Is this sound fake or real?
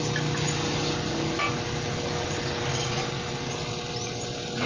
real